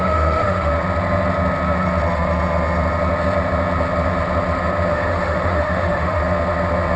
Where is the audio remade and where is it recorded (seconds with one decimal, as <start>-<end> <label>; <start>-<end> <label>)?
0.0-0.7 remade; 0.7-4.9 recorded; 4.9-6.2 remade; 6.2-7.0 recorded